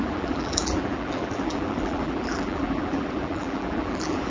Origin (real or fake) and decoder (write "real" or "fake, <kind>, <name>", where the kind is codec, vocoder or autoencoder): fake, vocoder, BigVGAN v2